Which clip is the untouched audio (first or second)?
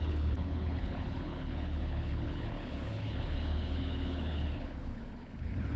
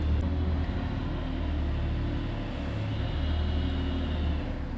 second